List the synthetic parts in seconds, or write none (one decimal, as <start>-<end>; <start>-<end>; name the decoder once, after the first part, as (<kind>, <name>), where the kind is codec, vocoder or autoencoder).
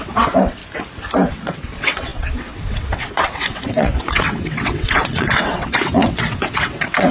0.0-0.6 (vocoder, WaveNeXt); 1.3-7.1